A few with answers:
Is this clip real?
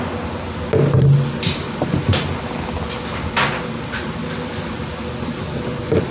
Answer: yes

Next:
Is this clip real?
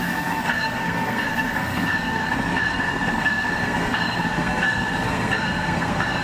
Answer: no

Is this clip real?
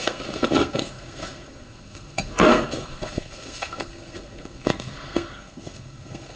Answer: no